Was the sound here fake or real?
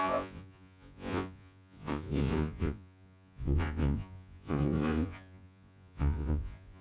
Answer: fake